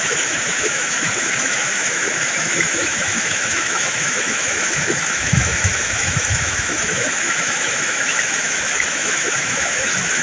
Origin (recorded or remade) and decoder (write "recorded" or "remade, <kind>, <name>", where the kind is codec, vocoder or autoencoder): remade, autoencoder, DAC-VAE